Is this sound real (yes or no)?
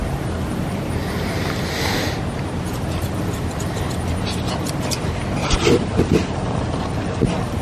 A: yes